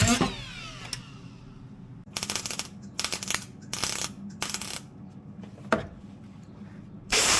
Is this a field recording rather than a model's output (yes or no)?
yes